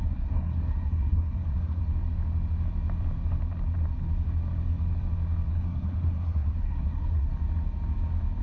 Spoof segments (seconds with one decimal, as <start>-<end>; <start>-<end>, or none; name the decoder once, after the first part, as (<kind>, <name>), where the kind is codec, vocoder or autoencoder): 0.0-1.8 (codec, SNAC); 5.5-7.3